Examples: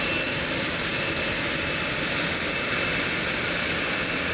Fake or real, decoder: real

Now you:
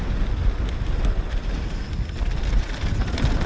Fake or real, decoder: real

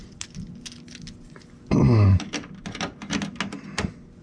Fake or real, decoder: real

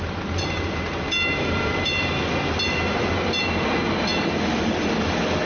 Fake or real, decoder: real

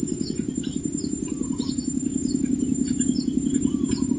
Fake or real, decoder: real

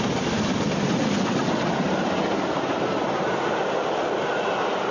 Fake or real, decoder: real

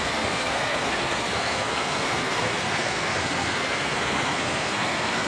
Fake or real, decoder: fake, codec, SNAC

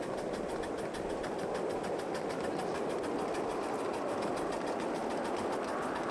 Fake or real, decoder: real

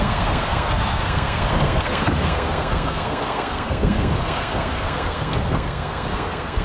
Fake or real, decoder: fake, codec, SNAC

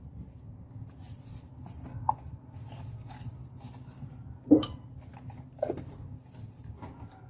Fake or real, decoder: real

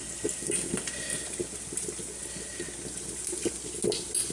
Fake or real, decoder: real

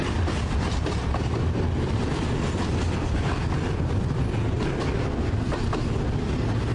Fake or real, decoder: real